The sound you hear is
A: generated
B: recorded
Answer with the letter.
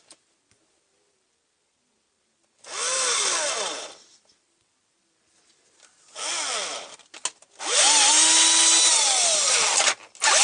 B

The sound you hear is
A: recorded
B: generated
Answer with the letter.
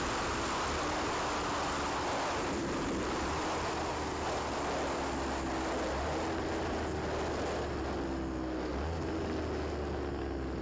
A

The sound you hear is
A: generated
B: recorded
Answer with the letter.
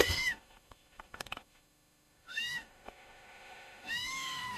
A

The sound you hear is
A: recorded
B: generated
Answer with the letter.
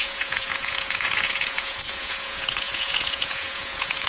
B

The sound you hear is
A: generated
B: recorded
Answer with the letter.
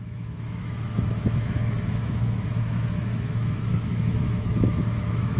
A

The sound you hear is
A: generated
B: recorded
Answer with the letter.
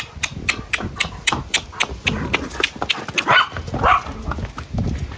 B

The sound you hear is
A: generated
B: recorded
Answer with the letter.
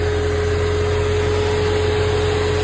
B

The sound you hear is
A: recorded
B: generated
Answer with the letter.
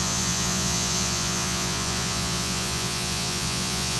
B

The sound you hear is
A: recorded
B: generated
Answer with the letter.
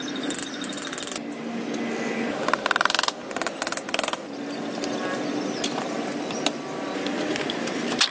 A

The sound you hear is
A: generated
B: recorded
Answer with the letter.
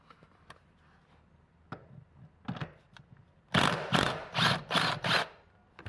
B